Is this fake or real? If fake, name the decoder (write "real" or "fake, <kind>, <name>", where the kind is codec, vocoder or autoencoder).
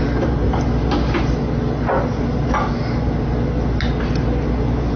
real